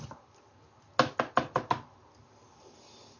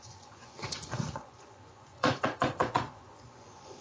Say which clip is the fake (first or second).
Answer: second